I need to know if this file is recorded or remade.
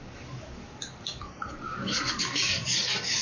remade